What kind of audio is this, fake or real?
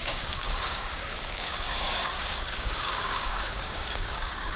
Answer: fake